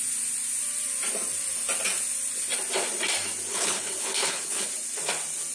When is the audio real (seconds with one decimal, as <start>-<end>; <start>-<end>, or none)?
0.0-3.5; 4.7-5.5